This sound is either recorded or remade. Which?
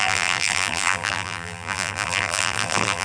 remade